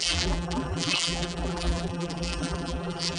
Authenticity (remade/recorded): remade